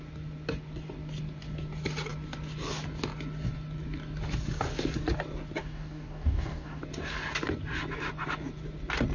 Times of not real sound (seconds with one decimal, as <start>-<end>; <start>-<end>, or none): 5.6-6.8